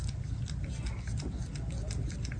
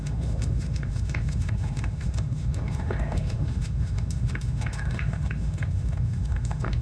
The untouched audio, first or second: first